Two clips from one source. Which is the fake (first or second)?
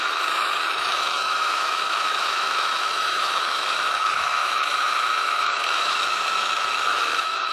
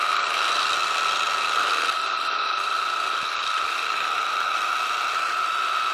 first